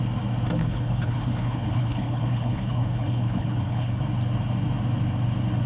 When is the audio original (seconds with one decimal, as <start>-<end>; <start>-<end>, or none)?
0.0-0.6; 4.0-5.7